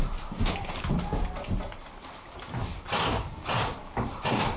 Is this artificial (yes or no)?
no